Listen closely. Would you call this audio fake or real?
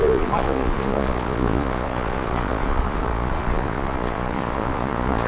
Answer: fake